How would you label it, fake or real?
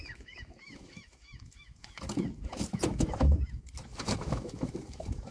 fake